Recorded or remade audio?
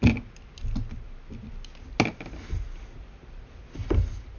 recorded